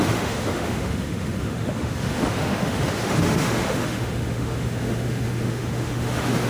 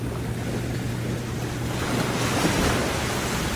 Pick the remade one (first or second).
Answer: first